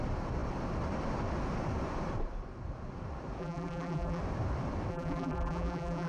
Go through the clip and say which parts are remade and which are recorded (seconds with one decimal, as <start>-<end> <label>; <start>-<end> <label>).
0.0-3.4 recorded; 3.4-4.2 remade; 4.2-4.9 recorded; 4.9-6.1 remade